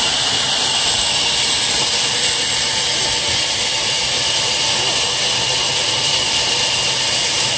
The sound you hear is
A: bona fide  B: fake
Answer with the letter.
B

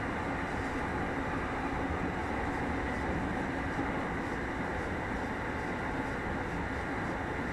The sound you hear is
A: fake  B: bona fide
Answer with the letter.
B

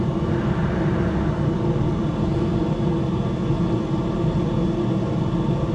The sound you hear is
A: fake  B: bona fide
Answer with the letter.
B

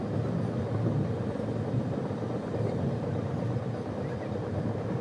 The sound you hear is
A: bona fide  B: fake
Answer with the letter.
A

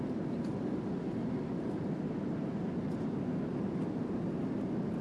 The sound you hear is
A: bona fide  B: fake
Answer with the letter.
A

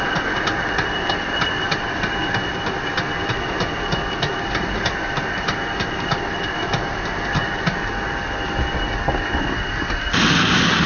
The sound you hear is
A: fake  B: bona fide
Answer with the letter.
B